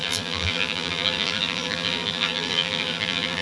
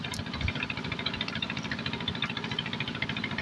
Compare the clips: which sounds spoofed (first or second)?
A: first